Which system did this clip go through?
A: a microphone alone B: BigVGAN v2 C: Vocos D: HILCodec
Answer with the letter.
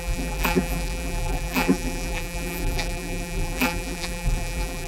B